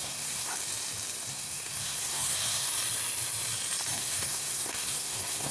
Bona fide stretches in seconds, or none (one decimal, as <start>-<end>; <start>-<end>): 0.5-1.3; 2.7-4.0